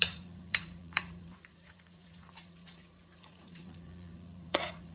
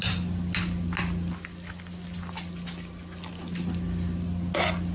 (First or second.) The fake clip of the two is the first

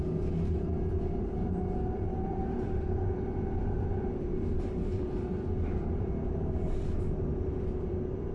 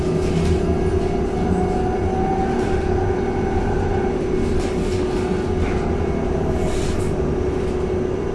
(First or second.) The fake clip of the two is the first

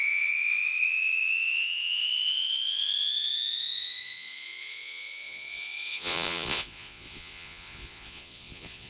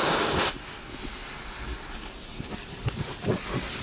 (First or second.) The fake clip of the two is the first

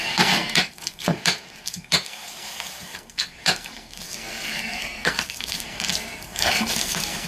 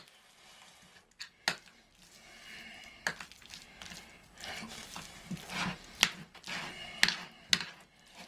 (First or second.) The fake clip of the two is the first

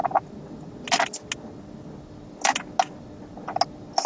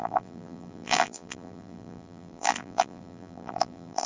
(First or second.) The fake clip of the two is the second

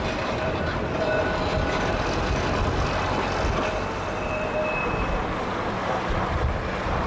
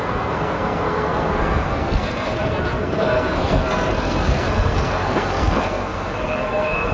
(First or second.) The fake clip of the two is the second